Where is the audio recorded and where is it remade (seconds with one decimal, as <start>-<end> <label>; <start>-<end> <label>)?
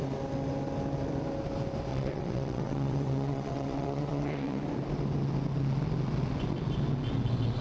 0.0-1.9 recorded; 1.9-4.6 remade; 4.6-7.6 recorded